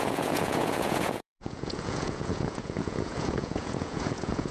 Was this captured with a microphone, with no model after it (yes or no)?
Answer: no